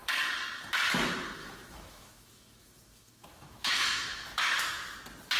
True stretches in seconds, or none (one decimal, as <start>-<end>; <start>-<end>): 0.0-1.4; 4.6-5.4